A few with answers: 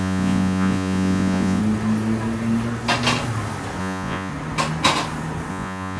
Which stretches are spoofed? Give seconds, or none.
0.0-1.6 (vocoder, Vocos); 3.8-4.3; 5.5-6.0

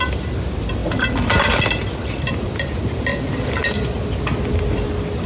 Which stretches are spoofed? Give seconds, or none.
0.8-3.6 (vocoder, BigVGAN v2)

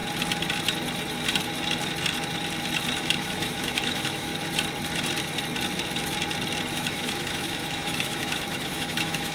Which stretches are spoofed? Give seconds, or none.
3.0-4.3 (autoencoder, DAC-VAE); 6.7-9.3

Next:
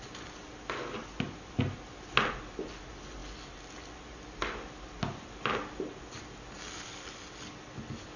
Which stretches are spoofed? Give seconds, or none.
none

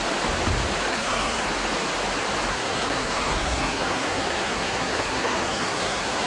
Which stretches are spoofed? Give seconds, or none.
0.9-1.5 (codec, SNAC); 2.5-6.3

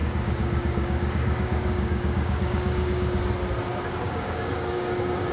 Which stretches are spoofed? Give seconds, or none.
0.0-3.2 (codec, DAC); 3.7-5.3

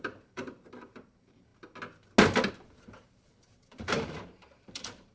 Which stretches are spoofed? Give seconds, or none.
0.0-1.5 (vocoder, BigVGAN v2); 2.5-5.1